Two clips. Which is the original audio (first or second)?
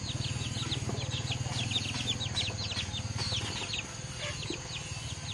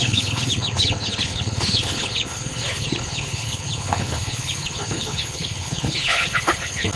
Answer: first